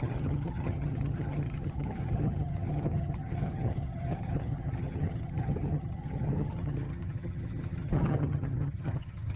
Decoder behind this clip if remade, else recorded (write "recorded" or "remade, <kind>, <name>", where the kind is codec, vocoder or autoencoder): remade, vocoder, HiFi-GAN